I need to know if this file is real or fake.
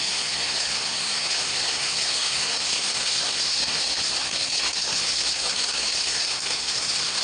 fake